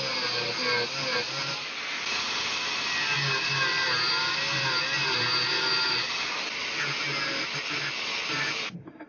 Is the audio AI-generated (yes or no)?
no